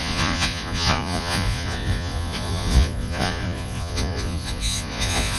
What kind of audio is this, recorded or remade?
remade